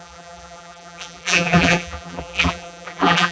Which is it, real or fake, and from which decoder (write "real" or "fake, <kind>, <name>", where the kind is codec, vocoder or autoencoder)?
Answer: fake, vocoder, BigVGAN v2